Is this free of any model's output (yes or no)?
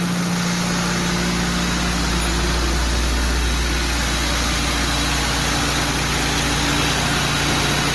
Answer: yes